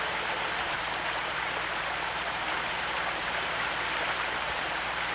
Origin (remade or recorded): remade